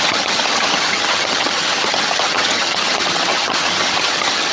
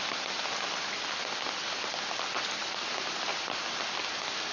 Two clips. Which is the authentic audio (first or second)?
second